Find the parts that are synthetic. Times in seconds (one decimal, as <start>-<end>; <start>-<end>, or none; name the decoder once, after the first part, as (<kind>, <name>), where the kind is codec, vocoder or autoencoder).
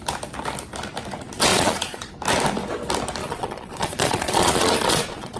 1.5-2.1 (vocoder, Vocos); 3.2-5.4